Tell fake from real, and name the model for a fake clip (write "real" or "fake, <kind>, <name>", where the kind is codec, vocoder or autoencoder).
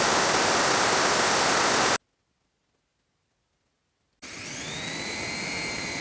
real